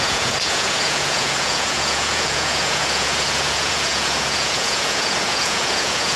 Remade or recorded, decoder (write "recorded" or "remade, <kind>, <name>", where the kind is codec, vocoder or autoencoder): remade, vocoder, Vocos